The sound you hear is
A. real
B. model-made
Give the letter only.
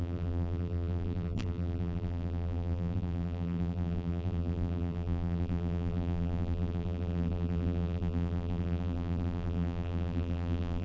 B